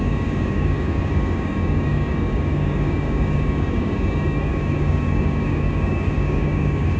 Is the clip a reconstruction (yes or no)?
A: yes